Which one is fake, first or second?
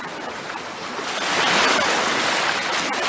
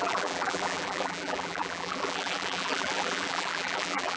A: second